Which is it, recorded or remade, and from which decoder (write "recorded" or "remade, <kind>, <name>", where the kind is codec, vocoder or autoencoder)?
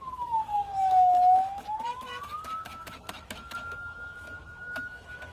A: remade, autoencoder, DAC-VAE